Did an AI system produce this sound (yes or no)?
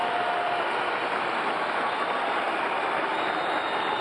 no